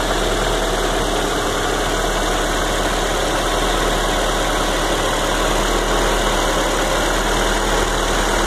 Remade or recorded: recorded